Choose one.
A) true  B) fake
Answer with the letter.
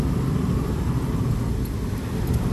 A